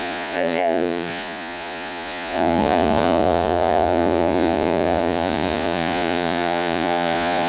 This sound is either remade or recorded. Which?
remade